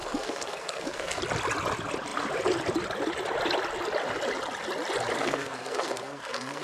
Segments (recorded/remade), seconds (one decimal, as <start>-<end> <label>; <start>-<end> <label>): 0.0-1.2 remade; 1.2-5.2 recorded; 5.2-6.6 remade